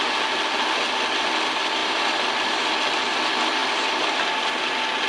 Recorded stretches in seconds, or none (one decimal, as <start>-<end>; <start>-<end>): 0.0-1.8; 2.7-3.6; 4.2-5.1